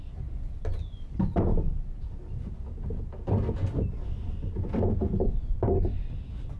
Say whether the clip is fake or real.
real